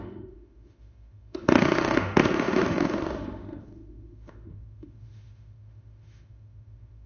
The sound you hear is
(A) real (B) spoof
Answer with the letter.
B